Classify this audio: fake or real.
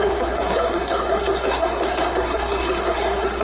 fake